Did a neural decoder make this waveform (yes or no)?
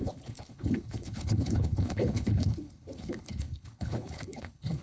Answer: yes